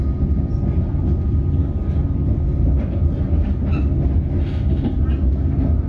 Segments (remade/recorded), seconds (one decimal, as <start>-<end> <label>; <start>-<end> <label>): 0.0-5.9 recorded